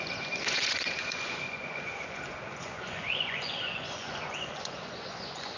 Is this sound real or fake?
fake